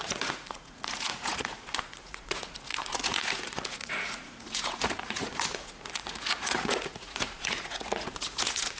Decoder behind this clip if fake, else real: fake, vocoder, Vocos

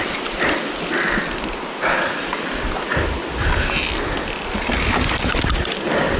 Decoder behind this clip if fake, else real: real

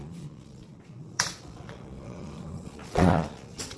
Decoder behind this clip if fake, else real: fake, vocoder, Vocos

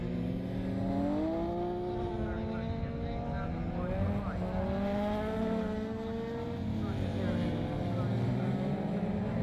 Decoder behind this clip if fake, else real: real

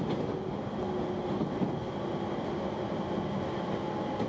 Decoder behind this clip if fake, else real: real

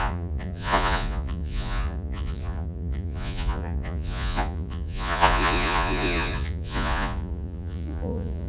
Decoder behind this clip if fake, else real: fake, vocoder, Vocos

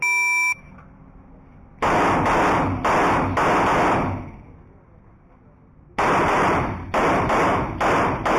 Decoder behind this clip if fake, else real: real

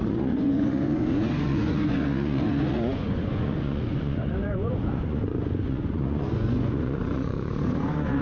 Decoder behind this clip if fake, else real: fake, vocoder, Vocos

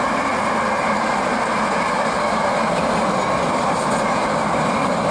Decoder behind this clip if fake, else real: real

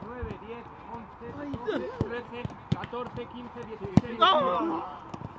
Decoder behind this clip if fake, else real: real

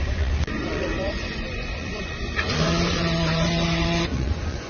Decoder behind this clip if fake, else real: fake, vocoder, Vocos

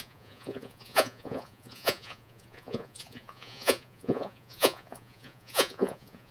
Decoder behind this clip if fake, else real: fake, vocoder, Vocos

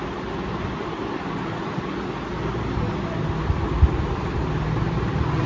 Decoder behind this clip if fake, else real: real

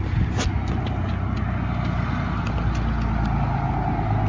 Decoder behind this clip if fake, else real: real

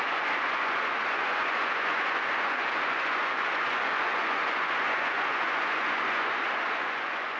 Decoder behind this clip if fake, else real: fake, vocoder, Vocos